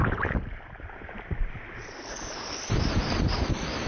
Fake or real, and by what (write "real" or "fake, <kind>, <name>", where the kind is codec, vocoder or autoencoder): real